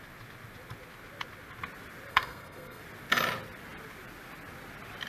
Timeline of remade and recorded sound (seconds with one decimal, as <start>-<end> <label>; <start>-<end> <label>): 0.0-2.1 recorded; 2.1-2.8 remade; 2.8-5.1 recorded